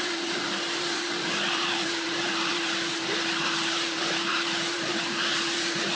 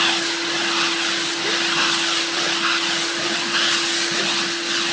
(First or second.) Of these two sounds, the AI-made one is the first